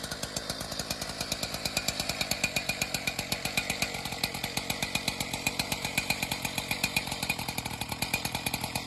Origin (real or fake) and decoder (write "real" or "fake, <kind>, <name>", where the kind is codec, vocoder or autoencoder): real